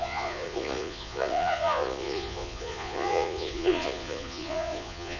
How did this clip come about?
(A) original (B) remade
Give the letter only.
B